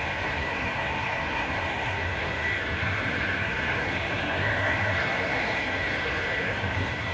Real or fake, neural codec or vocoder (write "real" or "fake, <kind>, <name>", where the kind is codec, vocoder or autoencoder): fake, codec, SNAC